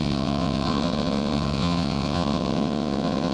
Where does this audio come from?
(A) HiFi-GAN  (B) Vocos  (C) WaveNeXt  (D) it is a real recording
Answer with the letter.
C